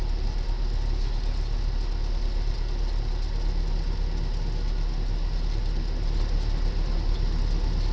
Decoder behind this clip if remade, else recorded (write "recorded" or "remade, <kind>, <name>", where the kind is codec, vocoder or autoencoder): recorded